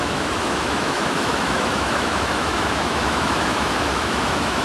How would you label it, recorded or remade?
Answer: remade